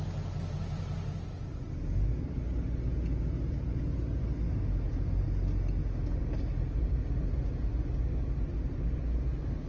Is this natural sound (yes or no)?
yes